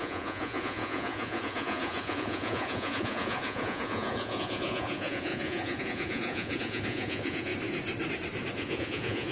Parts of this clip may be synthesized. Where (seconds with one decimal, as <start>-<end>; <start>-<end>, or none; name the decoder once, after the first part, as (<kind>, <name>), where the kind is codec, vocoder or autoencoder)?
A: 0.0-7.5 (vocoder, Vocos); 8.5-9.3